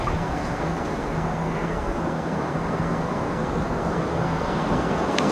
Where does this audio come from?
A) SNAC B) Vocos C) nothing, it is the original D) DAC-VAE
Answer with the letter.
A